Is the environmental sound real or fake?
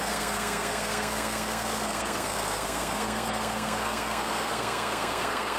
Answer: fake